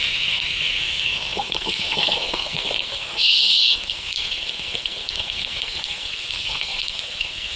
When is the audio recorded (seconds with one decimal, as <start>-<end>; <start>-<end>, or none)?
none